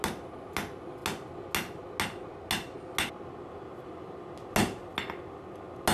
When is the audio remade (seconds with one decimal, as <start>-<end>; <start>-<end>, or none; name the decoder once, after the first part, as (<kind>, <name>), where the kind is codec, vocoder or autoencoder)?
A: none